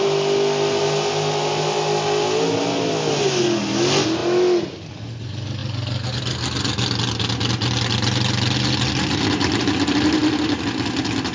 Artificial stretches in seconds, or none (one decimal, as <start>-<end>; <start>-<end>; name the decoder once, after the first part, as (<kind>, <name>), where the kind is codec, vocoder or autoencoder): none